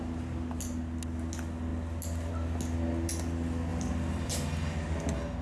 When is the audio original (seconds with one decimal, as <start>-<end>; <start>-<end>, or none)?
0.0-3.7; 4.3-5.4